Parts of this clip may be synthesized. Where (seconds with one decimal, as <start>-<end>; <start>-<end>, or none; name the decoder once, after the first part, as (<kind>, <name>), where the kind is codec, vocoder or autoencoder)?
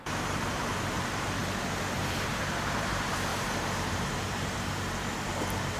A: 0.0-1.4 (vocoder, BigVGAN v2); 2.0-5.8